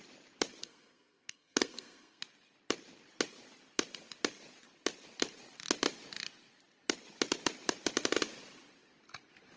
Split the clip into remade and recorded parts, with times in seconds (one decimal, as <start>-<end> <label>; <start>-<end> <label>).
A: 0.0-0.6 recorded; 0.6-2.2 remade; 2.2-9.6 recorded